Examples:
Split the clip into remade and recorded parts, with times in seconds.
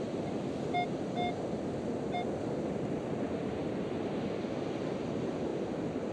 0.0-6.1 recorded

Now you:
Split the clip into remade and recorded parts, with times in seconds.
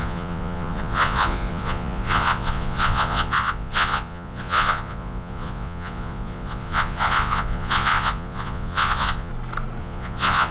0.0-9.3 remade; 9.3-9.8 recorded; 9.8-10.5 remade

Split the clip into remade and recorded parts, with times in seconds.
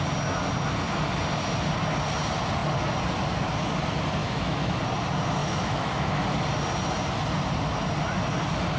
0.0-4.2 recorded; 4.2-4.8 remade; 4.8-5.4 recorded; 5.4-6.2 remade; 6.2-8.8 recorded